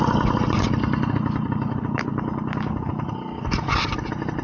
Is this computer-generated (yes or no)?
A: no